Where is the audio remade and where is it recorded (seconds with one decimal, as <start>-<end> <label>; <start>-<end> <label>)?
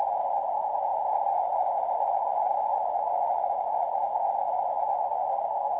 0.0-5.8 remade